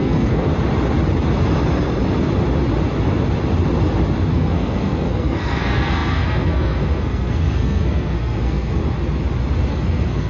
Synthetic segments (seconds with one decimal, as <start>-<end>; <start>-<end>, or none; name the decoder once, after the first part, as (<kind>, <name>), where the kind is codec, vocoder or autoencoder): 0.0-0.5 (codec, SNAC); 4.3-8.8; 9.7-10.3